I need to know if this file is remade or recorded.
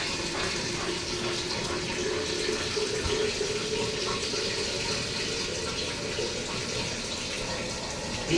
recorded